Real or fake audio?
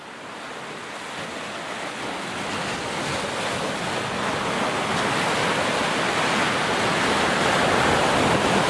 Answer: real